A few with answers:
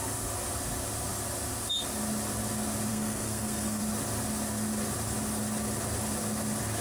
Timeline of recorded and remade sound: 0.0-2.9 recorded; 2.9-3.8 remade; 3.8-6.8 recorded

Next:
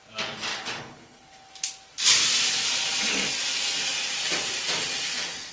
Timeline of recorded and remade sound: 0.0-0.5 recorded; 0.5-1.5 remade; 1.5-5.5 recorded

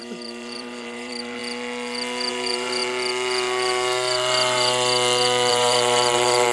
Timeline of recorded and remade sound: 0.0-1.4 remade; 1.4-2.3 recorded; 2.3-2.8 remade; 2.8-5.5 recorded; 5.5-6.5 remade

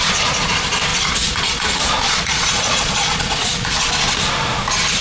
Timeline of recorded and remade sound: 0.0-0.9 recorded; 0.9-3.9 remade; 3.9-5.0 recorded

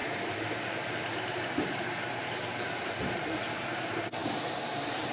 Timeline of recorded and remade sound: 0.0-5.1 remade

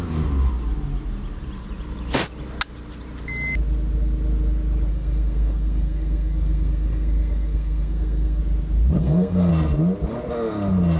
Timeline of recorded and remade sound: 0.0-4.9 recorded; 4.9-8.4 remade; 8.4-9.0 recorded; 9.0-9.5 remade; 9.5-11.0 recorded

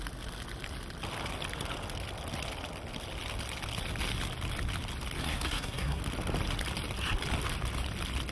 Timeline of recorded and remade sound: 0.0-5.2 recorded; 5.2-6.0 remade; 6.0-8.3 recorded